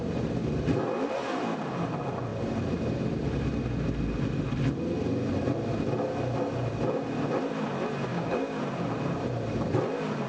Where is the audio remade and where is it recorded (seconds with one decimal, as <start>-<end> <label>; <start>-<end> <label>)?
0.0-8.1 recorded; 8.1-8.6 remade; 8.6-10.3 recorded